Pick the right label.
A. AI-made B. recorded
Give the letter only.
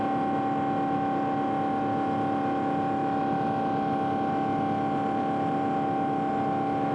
B